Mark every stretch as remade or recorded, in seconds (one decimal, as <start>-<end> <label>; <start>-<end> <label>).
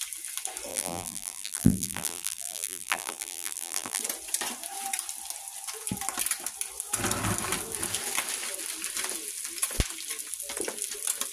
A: 0.0-0.7 recorded; 0.7-4.0 remade; 4.0-11.3 recorded